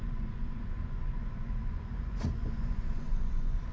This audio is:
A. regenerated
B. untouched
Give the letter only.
A